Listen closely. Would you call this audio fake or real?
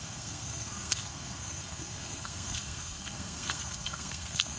fake